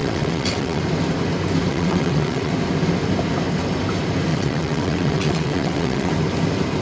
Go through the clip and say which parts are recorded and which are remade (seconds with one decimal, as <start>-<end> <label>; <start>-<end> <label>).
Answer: 0.0-0.8 remade; 0.8-1.7 recorded; 1.7-2.5 remade; 2.5-4.3 recorded; 4.3-6.1 remade; 6.1-6.8 recorded